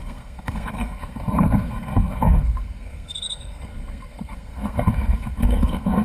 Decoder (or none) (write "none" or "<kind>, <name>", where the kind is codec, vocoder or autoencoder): codec, SNAC